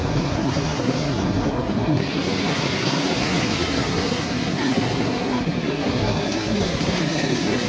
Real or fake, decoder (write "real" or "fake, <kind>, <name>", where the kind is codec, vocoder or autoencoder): fake, codec, SNAC